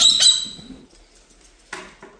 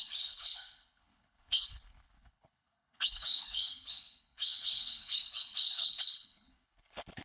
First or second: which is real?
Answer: first